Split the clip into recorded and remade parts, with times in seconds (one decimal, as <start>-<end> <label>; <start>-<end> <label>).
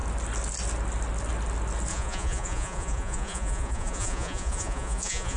0.0-1.9 recorded; 1.9-5.4 remade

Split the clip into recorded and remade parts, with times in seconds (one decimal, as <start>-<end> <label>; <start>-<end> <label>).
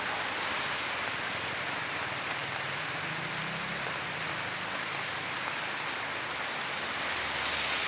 0.0-7.9 recorded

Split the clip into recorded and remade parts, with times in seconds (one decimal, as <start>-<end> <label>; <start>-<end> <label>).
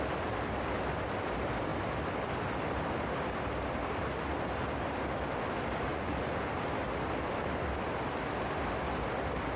0.0-5.9 recorded; 5.9-6.5 remade; 6.5-9.6 recorded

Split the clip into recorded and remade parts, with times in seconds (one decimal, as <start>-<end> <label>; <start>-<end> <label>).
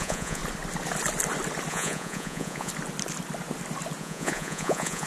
0.0-0.4 remade; 0.4-1.7 recorded; 1.7-2.7 remade; 2.7-4.0 recorded; 4.0-5.1 remade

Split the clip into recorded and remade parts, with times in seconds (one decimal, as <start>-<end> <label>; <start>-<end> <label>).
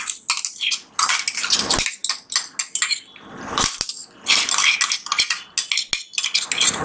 0.0-6.8 recorded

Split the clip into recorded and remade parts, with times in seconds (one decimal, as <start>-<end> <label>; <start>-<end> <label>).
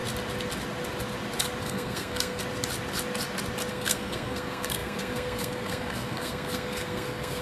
0.0-1.6 recorded; 1.6-2.4 remade; 2.4-3.7 recorded; 3.7-7.4 remade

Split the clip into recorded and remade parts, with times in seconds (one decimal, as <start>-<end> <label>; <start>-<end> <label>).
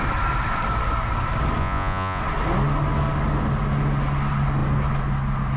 0.0-1.6 recorded; 1.6-2.2 remade; 2.2-5.6 recorded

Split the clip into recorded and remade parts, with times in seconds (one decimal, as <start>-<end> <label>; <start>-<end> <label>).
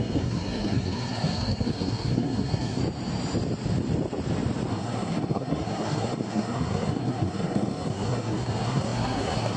0.0-2.8 remade; 2.8-4.7 recorded; 4.7-9.6 remade